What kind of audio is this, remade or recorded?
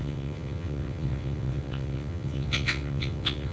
remade